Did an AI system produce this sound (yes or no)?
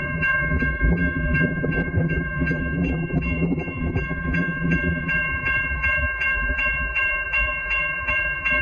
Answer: yes